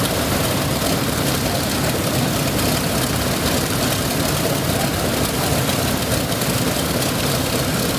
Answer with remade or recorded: remade